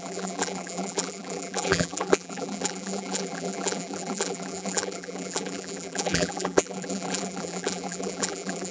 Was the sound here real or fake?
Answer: fake